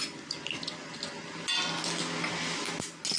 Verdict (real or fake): real